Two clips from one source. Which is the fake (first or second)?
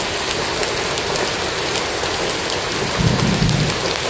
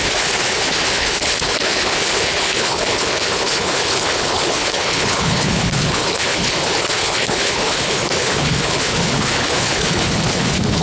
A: second